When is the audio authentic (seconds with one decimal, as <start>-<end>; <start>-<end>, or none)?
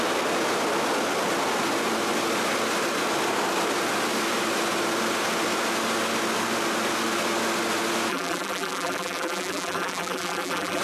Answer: 0.0-8.1